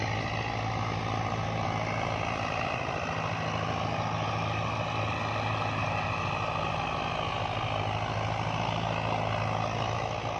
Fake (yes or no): no